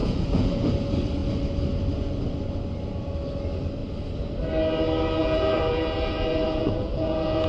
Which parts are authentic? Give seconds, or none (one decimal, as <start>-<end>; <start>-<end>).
0.7-5.2